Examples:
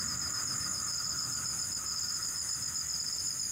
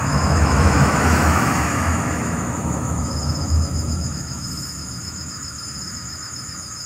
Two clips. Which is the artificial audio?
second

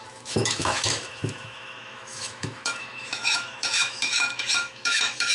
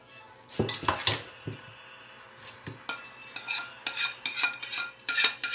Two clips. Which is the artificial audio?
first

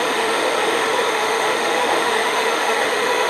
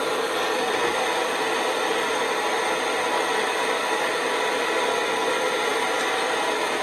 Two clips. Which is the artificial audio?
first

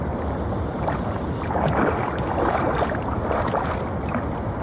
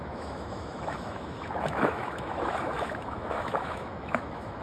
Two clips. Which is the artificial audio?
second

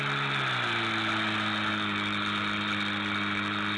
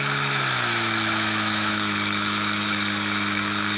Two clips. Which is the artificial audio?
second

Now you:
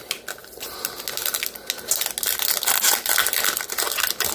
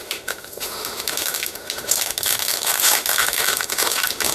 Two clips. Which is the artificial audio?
second